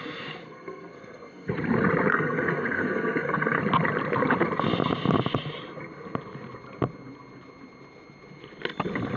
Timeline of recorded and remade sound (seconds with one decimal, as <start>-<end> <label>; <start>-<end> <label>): 0.0-0.4 recorded; 0.4-1.5 remade; 1.5-2.1 recorded; 2.1-3.6 remade; 3.6-9.2 recorded

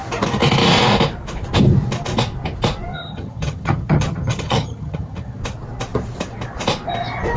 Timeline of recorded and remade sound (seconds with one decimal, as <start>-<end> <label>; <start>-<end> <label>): 0.0-2.9 recorded; 2.9-5.4 remade; 5.4-7.4 recorded

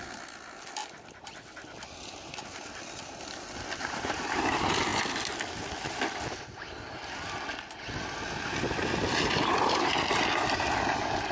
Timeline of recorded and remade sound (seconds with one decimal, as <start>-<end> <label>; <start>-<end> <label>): 0.0-11.3 recorded

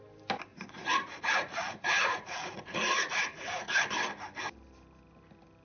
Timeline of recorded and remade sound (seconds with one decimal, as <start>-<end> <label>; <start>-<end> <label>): 0.0-0.5 recorded; 0.5-3.7 remade; 3.7-5.6 recorded